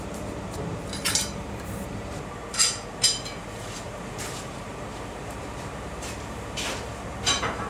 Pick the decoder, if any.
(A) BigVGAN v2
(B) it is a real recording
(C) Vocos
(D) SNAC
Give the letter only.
A